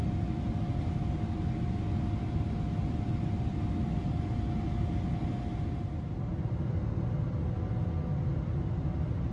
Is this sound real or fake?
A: real